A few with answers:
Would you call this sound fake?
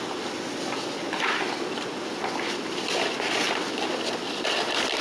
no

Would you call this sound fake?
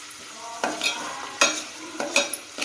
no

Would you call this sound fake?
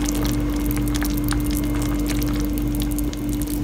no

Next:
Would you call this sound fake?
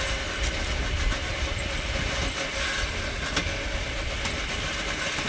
no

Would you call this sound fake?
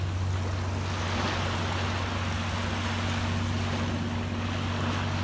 no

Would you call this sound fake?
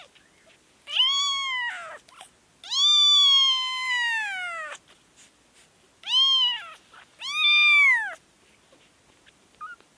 no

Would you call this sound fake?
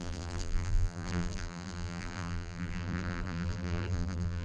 yes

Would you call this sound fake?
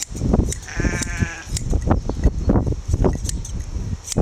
no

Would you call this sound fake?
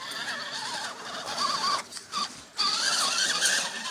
no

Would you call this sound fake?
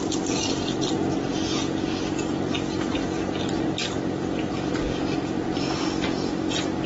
no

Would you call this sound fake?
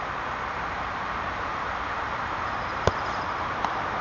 yes